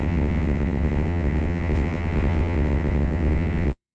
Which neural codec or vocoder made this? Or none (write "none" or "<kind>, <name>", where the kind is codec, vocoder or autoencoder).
vocoder, WaveNeXt